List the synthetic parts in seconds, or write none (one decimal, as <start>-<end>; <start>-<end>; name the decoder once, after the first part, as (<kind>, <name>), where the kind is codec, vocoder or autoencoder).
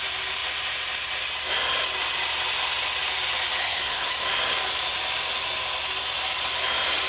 3.6-4.1 (codec, SNAC)